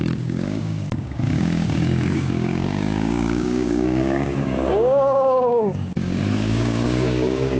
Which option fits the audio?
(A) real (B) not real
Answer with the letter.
B